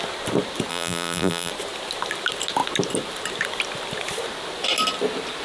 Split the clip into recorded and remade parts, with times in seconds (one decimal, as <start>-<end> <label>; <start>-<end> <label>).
0.0-0.7 recorded; 0.7-1.5 remade; 1.5-5.4 recorded